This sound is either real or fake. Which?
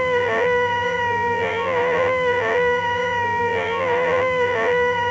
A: fake